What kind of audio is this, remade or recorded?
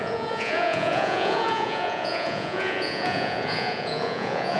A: remade